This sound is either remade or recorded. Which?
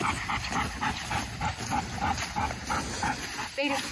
recorded